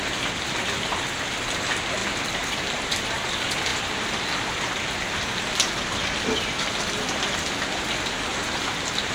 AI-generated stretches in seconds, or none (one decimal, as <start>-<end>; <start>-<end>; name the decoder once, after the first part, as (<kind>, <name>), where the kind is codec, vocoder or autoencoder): 2.0-2.8 (vocoder, BigVGAN v2); 8.3-9.1